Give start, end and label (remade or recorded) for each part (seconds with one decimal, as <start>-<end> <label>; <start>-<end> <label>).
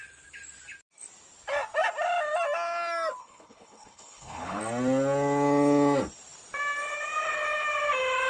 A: 0.0-3.2 recorded; 3.2-4.6 remade; 4.6-8.3 recorded